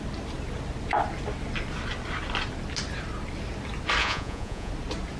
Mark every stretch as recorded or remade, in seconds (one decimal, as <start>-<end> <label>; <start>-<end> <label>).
0.0-4.0 recorded; 4.0-4.7 remade; 4.7-5.2 recorded